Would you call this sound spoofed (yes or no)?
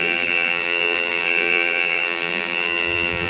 yes